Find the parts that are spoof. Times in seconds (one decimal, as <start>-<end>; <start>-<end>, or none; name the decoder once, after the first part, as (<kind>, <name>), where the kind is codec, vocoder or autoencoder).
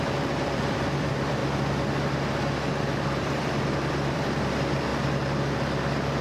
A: 0.0-1.4 (vocoder, BigVGAN v2); 2.7-4.9